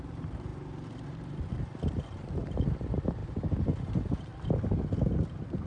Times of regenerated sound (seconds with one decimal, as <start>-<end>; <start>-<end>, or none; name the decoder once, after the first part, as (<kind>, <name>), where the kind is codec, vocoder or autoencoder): 0.0-0.5 (vocoder, BigVGAN v2); 1.9-4.3

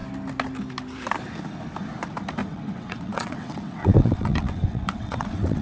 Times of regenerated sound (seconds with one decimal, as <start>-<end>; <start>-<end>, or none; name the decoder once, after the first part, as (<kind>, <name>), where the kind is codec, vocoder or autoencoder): 2.4-5.6 (vocoder, WaveNeXt)

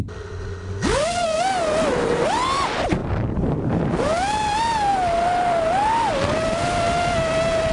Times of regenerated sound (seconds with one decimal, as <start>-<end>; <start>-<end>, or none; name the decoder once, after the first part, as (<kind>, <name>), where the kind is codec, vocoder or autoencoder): 3.0-3.9 (vocoder, BigVGAN v2)

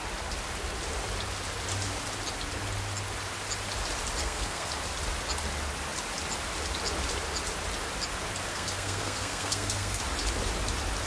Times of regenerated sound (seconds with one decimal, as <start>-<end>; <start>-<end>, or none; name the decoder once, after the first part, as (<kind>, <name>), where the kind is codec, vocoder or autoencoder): 4.2-4.7 (codec, SNAC); 8.5-10.0

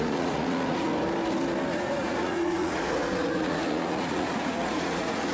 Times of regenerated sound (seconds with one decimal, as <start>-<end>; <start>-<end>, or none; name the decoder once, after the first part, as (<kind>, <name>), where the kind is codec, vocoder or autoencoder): 0.0-0.9 (vocoder, Vocos); 1.7-5.3

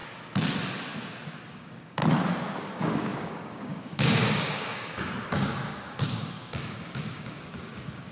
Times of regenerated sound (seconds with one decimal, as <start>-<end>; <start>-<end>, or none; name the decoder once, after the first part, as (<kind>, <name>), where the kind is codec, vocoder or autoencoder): 1.5-2.0 (codec, DAC); 2.6-8.1

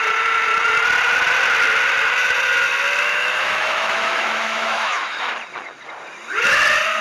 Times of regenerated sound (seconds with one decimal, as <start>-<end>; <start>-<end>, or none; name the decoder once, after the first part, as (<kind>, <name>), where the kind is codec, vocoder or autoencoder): 3.1-5.3 (autoencoder, DAC-VAE)